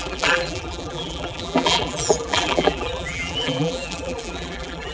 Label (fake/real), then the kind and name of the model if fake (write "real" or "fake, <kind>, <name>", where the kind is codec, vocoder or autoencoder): fake, vocoder, BigVGAN v2